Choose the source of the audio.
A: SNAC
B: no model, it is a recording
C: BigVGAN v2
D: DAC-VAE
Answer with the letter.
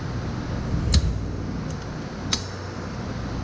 B